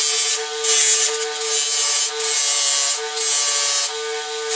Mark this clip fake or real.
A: real